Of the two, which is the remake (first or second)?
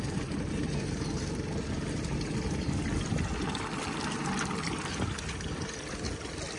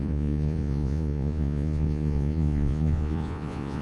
second